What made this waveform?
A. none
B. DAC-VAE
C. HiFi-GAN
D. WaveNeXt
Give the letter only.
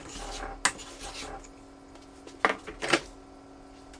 A